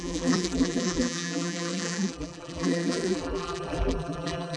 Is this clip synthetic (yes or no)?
yes